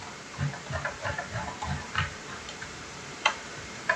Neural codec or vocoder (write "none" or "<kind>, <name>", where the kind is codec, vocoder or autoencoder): vocoder, BigVGAN v2